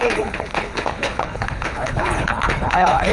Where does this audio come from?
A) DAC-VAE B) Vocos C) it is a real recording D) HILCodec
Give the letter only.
D